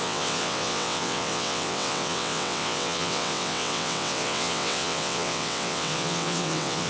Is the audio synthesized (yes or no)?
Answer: yes